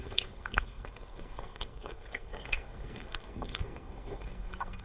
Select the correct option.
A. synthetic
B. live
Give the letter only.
A